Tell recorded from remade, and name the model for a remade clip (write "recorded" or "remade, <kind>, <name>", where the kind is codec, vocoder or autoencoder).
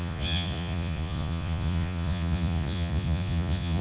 remade, vocoder, Vocos